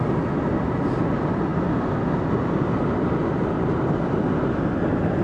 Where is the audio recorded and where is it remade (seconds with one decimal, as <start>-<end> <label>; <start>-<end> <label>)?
0.0-5.2 recorded